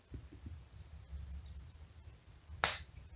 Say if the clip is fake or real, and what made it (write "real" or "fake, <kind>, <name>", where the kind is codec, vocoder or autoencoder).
real